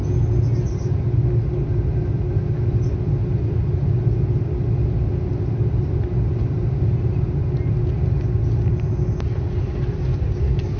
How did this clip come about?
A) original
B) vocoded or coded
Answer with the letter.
A